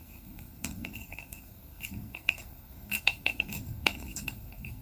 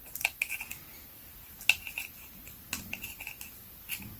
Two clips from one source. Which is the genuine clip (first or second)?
second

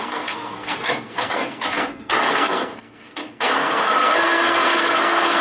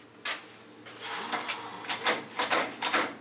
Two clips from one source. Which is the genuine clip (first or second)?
second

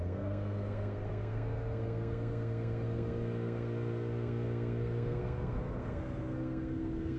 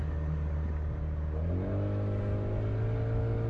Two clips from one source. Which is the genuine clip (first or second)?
second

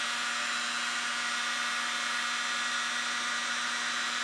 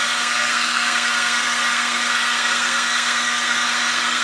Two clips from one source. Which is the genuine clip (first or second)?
first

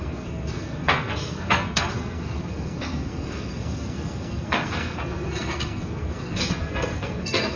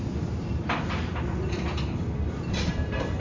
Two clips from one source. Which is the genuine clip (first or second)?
second